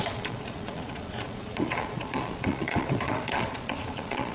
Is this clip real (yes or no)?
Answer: no